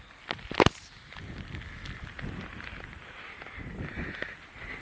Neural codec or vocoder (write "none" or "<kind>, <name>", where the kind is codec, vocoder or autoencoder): none